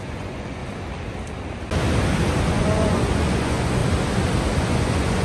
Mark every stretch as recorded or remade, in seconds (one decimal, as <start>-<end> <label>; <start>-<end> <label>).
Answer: 0.0-0.6 remade; 0.6-2.5 recorded; 2.5-3.8 remade; 3.8-4.6 recorded; 4.6-5.2 remade